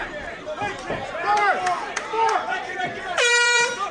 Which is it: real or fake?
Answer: fake